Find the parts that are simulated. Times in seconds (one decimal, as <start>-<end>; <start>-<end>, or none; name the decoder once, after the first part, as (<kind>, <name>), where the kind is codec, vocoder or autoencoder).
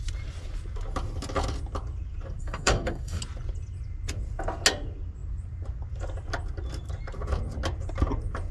2.4-3.2 (codec, DAC)